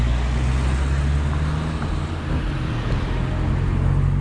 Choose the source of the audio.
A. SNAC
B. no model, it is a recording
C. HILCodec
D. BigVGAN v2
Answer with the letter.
B